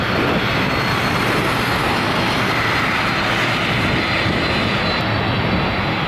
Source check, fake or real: real